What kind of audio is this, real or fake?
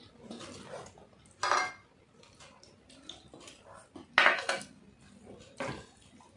real